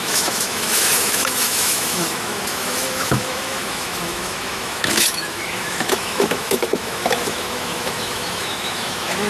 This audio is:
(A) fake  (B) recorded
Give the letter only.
A